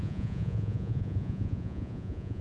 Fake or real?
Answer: fake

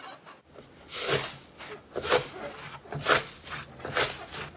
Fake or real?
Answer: real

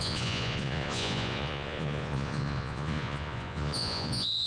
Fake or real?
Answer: fake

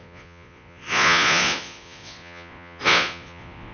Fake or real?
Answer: fake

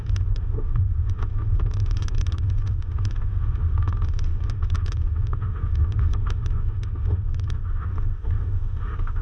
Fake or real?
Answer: fake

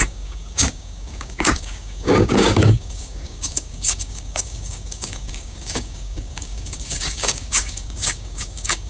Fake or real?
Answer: fake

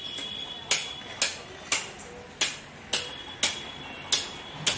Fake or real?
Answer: real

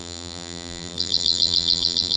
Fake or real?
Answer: fake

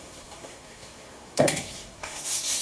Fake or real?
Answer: fake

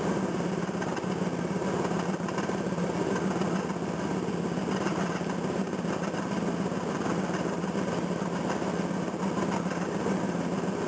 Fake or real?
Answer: real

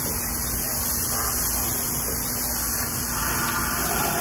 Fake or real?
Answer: real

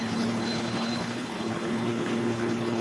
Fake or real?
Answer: fake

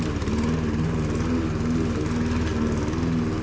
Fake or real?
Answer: real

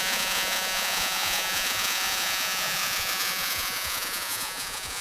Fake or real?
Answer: fake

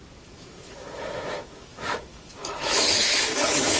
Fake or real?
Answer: fake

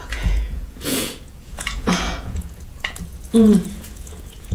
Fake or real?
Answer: fake